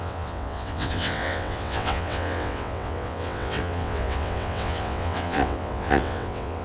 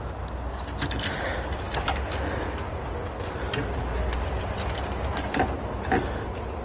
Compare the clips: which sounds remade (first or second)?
first